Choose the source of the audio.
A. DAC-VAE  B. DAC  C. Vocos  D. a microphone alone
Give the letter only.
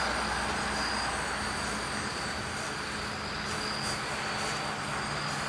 D